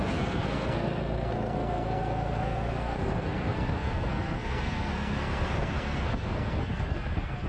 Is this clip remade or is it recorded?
remade